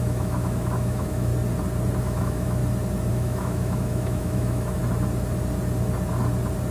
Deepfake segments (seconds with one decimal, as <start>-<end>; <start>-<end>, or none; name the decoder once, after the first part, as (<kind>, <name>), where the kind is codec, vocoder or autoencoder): 0.0-1.3 (autoencoder, DAC-VAE); 2.0-2.6; 3.1-4.8